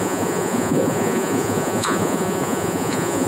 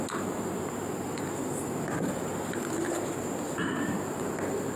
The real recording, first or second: second